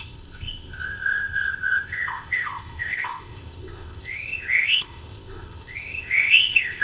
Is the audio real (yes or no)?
no